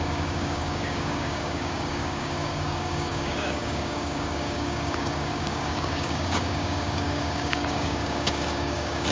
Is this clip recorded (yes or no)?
no